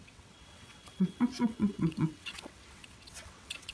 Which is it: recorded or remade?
remade